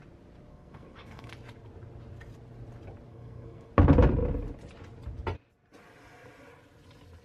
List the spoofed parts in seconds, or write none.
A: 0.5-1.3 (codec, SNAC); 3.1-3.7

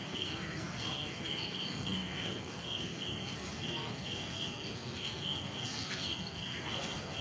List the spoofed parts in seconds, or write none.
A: 0.0-7.2 (codec, SNAC)

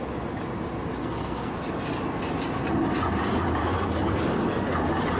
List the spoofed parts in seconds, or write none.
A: 1.0-1.5 (codec, SNAC); 3.6-4.2